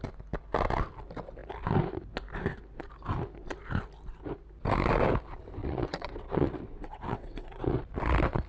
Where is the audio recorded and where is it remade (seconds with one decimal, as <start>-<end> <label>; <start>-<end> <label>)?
0.0-5.6 recorded; 5.6-7.8 remade; 7.8-8.5 recorded